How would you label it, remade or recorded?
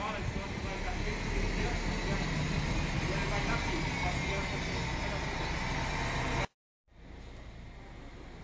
recorded